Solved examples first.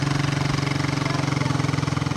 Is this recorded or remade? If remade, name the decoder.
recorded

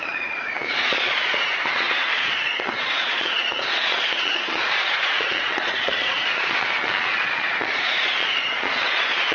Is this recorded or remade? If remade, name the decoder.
remade, vocoder, Vocos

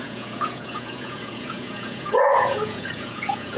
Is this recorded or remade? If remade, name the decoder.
remade, vocoder, Vocos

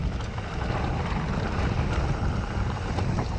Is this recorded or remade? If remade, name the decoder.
recorded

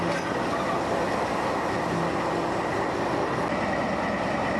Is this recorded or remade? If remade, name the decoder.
recorded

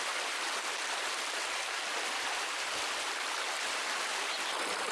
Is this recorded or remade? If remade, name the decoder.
recorded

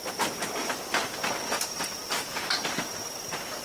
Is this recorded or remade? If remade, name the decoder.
recorded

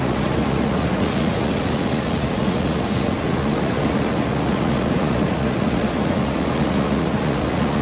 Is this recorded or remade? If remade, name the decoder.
remade, vocoder, Vocos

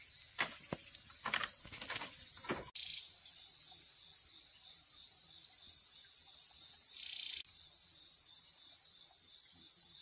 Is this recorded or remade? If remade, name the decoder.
recorded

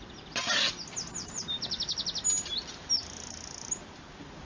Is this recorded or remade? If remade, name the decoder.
recorded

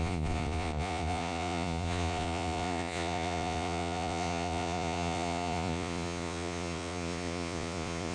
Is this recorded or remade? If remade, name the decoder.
remade, vocoder, Vocos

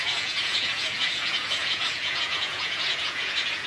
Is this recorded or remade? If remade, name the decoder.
remade, vocoder, Vocos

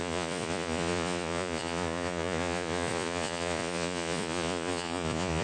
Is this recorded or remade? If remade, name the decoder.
remade, vocoder, Vocos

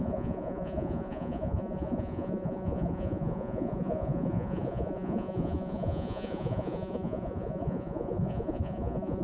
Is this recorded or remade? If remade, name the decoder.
remade, vocoder, Vocos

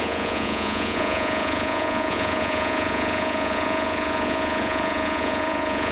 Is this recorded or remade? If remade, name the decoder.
remade, vocoder, Vocos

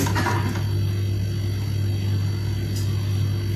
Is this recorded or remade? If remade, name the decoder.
recorded